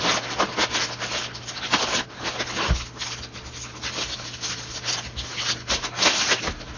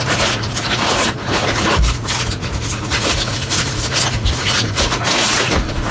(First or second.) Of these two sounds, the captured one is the first